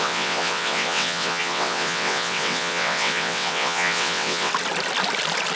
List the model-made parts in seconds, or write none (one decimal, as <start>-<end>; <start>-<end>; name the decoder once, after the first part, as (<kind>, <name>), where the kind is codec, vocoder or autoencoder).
0.0-4.5 (vocoder, WaveNeXt)